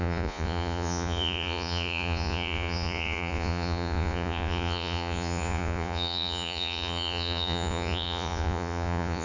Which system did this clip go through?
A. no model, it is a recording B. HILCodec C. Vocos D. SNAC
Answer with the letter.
C